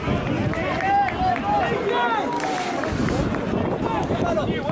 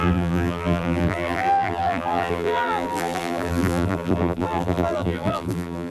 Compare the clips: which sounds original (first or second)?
first